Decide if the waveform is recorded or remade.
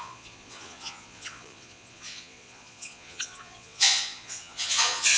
remade